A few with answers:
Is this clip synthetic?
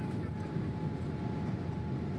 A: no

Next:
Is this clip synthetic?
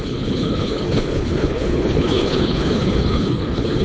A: yes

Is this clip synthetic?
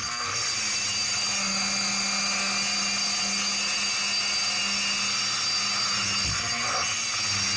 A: no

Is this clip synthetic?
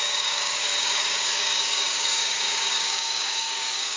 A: yes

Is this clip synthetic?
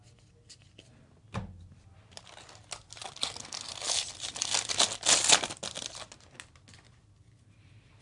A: no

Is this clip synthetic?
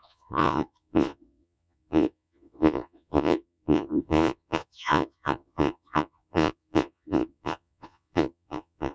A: yes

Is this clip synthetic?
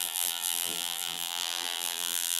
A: yes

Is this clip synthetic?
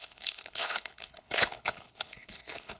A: yes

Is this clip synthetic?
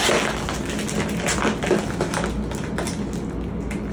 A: no